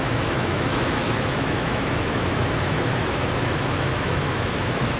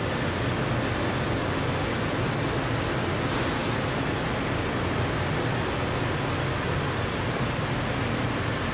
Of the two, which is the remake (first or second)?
first